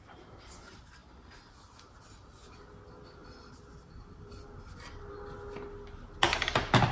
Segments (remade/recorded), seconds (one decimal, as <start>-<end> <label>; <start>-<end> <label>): 0.0-6.9 recorded